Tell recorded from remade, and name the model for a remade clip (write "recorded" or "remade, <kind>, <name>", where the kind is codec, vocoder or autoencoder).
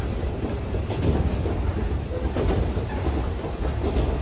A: recorded